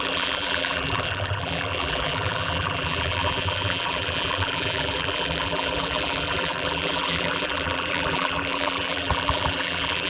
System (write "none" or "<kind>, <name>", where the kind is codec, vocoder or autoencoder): vocoder, BigVGAN v2